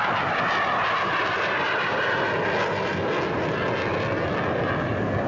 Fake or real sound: real